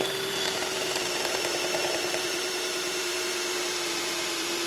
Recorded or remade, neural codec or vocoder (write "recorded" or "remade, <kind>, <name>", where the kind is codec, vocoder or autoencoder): remade, vocoder, BigVGAN v2